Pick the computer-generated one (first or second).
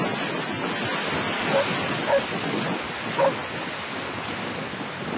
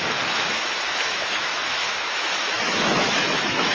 second